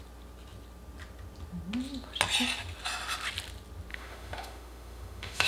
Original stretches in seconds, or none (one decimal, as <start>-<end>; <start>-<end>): 0.0-3.9